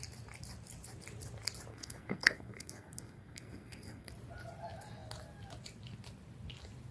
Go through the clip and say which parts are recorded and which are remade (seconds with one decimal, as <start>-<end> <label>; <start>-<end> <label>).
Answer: 0.0-1.7 recorded; 1.7-4.1 remade; 4.1-6.9 recorded